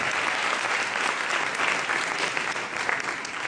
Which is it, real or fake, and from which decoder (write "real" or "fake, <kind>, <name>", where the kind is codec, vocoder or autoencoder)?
real